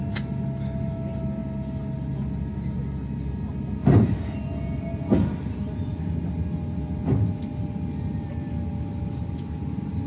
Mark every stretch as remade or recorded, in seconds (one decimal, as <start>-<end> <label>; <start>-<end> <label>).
0.0-10.1 recorded